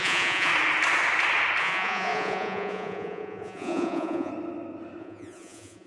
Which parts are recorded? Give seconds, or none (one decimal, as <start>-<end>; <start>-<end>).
0.5-1.6; 4.3-5.0